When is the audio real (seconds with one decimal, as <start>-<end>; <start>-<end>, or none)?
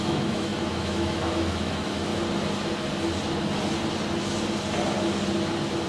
2.1-5.9